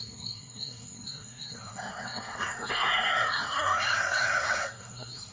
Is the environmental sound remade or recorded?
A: remade